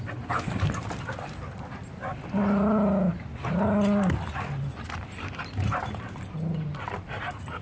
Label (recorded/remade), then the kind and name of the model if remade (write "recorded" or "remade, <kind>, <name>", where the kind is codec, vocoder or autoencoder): recorded